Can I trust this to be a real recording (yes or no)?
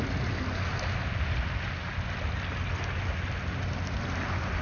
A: yes